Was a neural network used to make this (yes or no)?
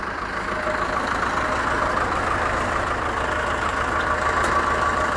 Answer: no